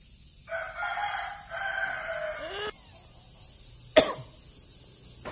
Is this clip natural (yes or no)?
yes